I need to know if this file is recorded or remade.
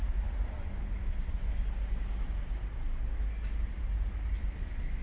recorded